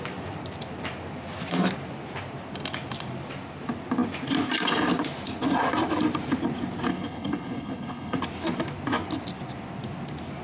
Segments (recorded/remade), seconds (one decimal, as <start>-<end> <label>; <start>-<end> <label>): 0.0-6.9 recorded; 6.9-8.2 remade; 8.2-10.4 recorded